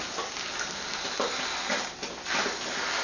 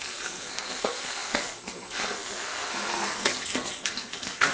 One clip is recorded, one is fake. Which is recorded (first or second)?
first